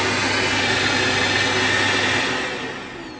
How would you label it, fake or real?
real